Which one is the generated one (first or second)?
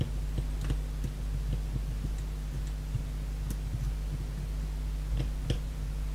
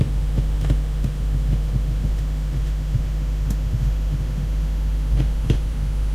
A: second